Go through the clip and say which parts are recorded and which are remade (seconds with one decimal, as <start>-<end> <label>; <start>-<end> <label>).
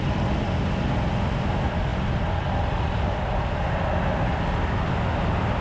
0.0-5.6 recorded